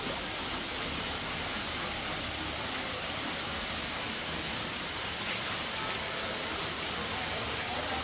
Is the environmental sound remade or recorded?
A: recorded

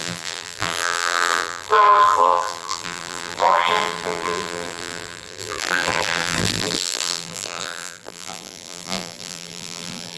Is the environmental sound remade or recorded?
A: remade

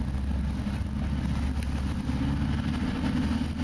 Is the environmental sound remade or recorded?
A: recorded